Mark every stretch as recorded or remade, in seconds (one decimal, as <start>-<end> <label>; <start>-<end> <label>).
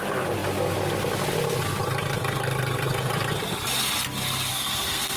0.0-4.5 recorded; 4.5-5.2 remade